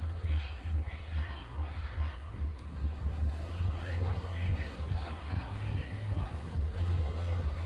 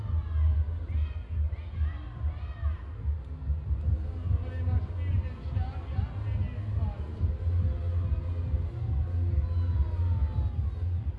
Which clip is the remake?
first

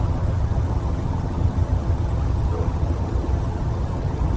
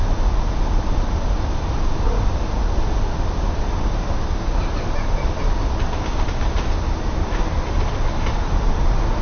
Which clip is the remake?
first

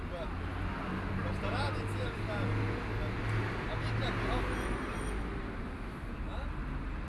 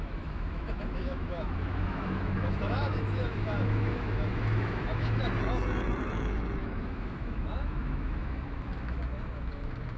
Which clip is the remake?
second